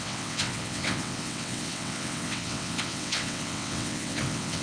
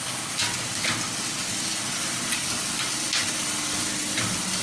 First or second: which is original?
second